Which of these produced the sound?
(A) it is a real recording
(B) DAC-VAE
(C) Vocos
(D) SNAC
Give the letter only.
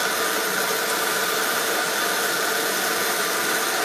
A